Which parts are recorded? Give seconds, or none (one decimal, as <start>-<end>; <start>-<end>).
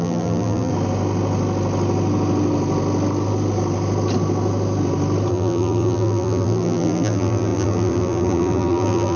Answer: 0.7-5.3